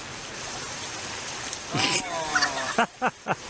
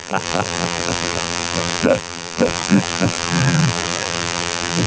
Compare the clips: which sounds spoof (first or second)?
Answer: second